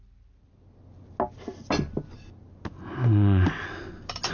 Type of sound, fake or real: real